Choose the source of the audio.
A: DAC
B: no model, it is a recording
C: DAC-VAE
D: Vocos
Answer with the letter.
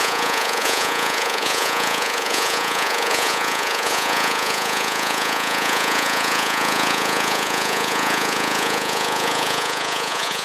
D